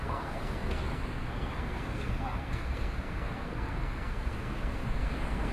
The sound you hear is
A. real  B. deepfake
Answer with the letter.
B